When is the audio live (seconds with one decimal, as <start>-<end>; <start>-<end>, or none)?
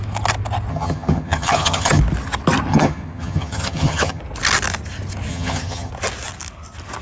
0.0-0.7; 2.0-2.7; 4.2-5.3; 5.9-7.0